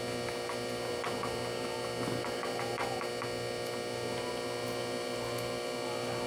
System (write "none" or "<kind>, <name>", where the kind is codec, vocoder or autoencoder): none